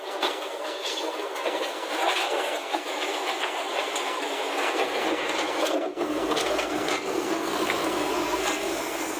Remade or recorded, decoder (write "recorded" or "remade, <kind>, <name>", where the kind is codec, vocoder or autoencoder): remade, codec, SNAC